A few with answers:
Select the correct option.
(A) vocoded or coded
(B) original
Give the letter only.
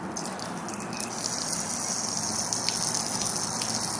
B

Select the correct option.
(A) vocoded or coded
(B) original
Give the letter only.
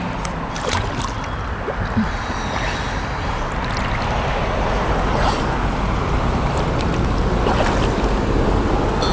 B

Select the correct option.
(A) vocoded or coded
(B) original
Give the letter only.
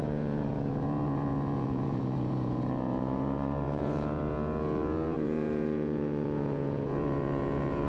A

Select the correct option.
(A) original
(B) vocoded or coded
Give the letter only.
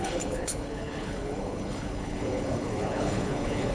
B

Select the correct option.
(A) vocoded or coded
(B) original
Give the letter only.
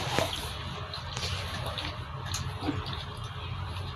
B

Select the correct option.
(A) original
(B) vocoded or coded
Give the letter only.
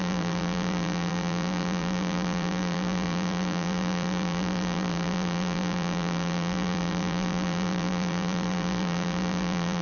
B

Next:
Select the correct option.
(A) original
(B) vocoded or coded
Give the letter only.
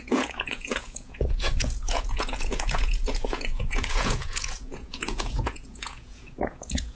B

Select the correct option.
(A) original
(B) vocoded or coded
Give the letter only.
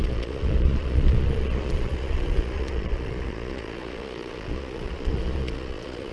B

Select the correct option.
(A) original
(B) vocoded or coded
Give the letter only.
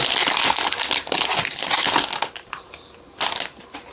A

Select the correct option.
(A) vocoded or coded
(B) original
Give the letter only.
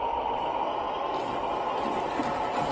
B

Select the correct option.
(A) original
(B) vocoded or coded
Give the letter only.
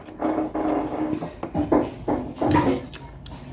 A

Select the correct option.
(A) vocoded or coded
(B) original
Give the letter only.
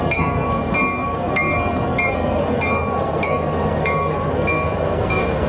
A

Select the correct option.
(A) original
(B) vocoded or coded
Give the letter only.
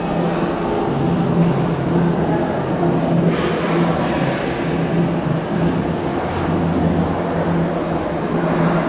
A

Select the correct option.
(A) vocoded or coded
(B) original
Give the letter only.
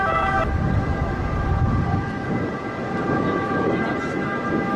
B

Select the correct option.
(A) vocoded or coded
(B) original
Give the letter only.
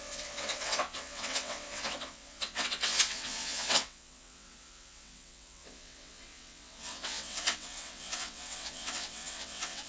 A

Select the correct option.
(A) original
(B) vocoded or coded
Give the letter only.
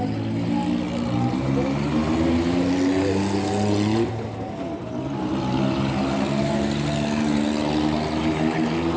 A